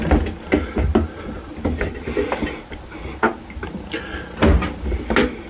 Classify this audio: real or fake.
real